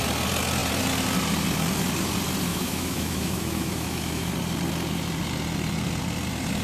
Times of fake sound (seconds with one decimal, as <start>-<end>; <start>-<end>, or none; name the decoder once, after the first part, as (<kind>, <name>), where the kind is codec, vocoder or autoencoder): 2.5-4.3 (autoencoder, DAC-VAE)